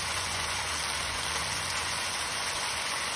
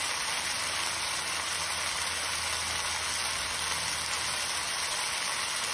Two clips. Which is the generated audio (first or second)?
first